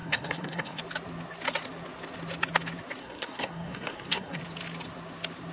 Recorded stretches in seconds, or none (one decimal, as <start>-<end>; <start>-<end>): 0.8-3.0; 4.4-5.5